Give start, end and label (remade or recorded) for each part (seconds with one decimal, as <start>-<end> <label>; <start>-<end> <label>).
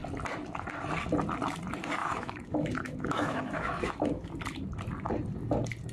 0.0-2.0 recorded; 2.0-4.3 remade; 4.3-5.9 recorded